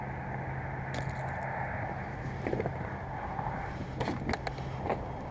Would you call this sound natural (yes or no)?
yes